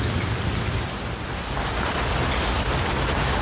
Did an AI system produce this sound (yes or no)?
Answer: no